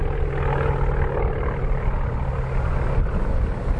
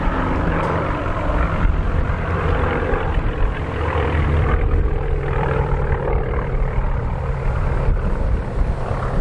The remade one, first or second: second